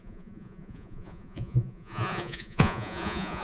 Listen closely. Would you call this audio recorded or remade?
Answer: remade